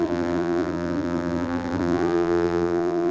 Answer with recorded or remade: remade